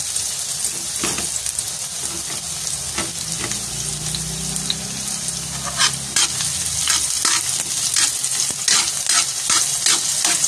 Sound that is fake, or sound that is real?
real